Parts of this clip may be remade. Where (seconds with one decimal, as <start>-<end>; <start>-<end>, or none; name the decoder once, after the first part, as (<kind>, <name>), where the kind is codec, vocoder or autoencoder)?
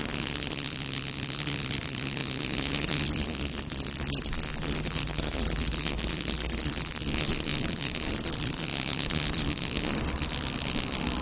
none